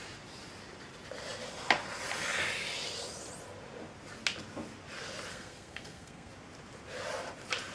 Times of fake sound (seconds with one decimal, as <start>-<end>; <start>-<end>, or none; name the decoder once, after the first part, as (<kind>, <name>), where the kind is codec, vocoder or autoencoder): 5.3-6.3 (codec, SNAC)